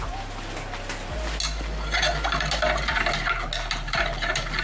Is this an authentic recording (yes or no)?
yes